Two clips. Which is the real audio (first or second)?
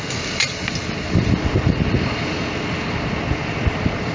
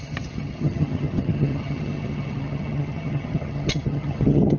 first